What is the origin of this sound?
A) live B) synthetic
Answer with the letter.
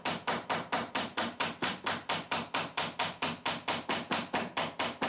A